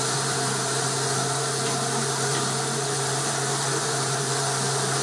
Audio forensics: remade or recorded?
recorded